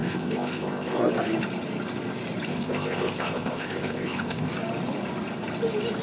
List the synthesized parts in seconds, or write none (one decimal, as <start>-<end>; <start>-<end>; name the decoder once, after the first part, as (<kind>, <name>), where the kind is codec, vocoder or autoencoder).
0.0-1.1 (codec, ZipCodec); 2.5-4.5